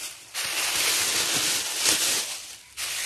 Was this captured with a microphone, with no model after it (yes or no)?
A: yes